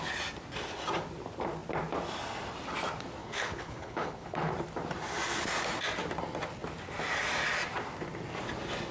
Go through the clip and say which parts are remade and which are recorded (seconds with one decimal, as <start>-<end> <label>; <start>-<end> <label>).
0.0-3.2 recorded; 3.2-4.5 remade; 4.5-8.9 recorded